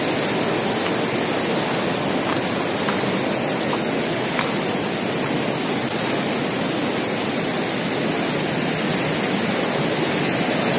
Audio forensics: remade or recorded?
recorded